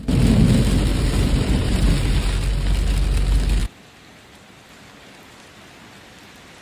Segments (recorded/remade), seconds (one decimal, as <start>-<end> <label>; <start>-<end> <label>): 0.0-0.9 recorded; 0.9-1.9 remade; 1.9-3.6 recorded; 3.6-4.7 remade; 4.7-6.6 recorded